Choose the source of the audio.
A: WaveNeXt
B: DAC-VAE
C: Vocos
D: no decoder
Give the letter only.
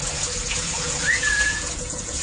C